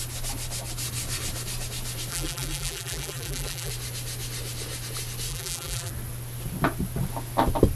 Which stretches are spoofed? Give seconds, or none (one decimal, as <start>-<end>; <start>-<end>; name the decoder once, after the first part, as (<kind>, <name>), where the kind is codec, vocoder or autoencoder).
2.1-3.7 (vocoder, BigVGAN v2); 5.3-5.9